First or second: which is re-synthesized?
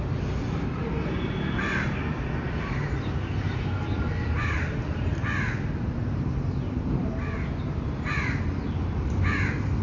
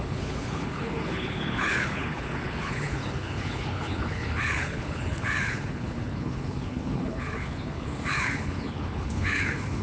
second